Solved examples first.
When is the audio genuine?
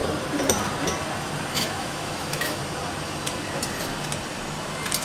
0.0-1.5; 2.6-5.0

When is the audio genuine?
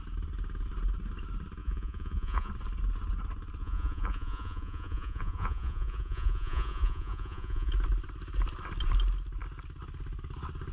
0.0-1.6; 2.5-3.6; 7.7-10.7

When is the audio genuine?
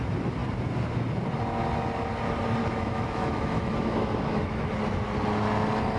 0.0-2.6; 4.7-6.0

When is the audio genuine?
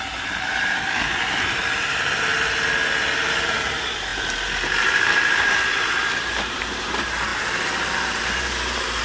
2.3-3.3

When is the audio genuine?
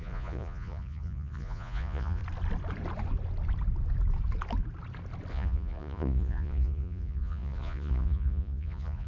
2.2-5.3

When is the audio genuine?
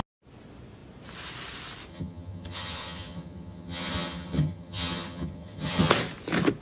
0.0-1.9; 5.9-6.6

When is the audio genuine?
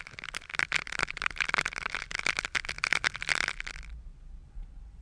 0.0-4.4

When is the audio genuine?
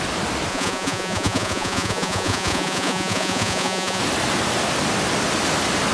0.0-0.5; 4.0-5.9